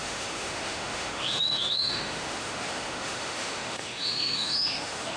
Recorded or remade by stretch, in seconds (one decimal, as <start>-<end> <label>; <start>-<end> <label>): 0.0-5.2 remade